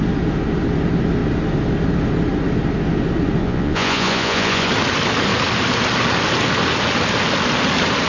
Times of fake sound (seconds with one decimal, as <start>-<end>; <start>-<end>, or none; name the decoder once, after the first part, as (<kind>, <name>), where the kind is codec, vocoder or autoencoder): 3.4-4.7 (vocoder, Vocos)